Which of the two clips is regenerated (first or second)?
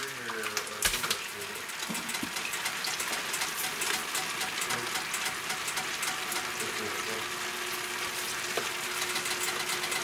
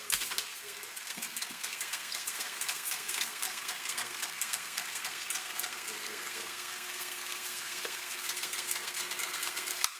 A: second